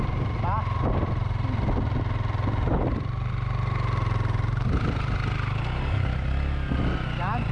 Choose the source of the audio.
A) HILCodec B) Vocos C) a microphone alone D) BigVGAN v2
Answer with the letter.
C